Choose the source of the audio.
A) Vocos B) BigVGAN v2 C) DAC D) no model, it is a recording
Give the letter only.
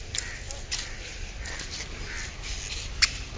D